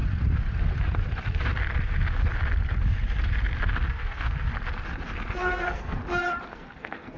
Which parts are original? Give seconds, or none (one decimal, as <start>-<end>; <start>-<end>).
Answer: 0.0-3.9; 4.5-5.4; 6.0-6.5